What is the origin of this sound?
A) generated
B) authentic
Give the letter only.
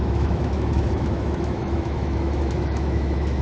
A